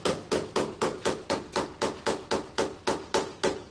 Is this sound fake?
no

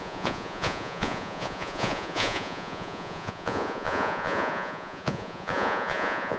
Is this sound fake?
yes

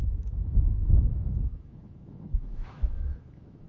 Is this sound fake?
yes